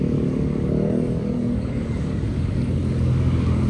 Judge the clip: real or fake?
fake